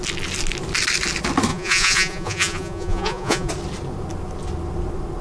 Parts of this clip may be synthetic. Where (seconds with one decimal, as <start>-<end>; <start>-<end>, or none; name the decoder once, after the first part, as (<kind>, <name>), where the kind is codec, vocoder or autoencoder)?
1.5-3.5 (vocoder, Vocos)